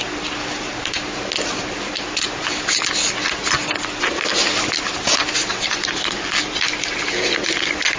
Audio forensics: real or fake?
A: real